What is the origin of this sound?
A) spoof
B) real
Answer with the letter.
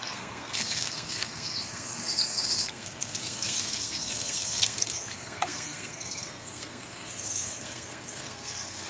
A